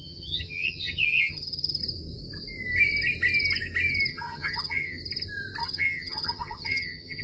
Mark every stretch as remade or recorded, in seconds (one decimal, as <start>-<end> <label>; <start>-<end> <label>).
0.0-1.8 remade; 1.8-4.1 recorded; 4.1-5.0 remade; 5.0-5.6 recorded; 5.6-7.2 remade